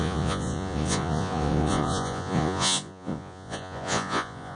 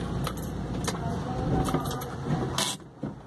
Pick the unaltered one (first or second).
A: second